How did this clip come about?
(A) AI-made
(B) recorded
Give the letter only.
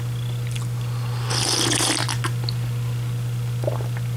B